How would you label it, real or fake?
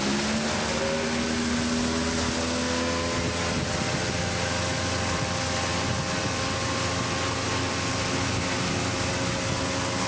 real